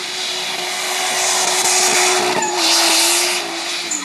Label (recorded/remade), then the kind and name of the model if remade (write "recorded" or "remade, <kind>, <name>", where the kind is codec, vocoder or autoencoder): recorded